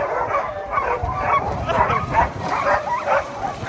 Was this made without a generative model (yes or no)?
no